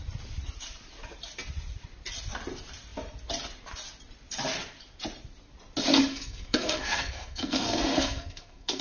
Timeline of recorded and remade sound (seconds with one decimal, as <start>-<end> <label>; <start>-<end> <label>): 0.0-6.1 recorded; 6.1-8.8 remade